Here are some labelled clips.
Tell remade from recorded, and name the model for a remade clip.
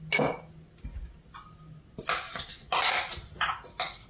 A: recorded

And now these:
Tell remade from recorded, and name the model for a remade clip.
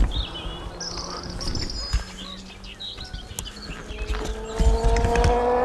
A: recorded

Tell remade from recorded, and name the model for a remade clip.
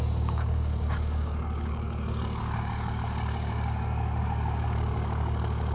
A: remade, codec, DAC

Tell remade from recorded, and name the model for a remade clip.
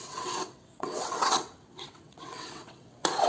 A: remade, vocoder, WaveNeXt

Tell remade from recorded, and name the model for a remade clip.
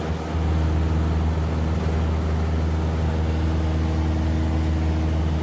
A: recorded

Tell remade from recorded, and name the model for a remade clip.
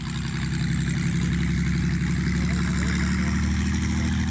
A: recorded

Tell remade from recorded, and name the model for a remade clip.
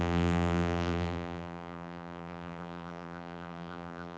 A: remade, vocoder, BigVGAN v2